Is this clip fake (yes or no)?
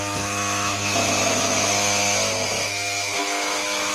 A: yes